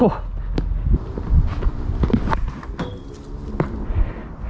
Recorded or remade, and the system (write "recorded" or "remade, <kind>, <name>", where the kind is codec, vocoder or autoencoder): recorded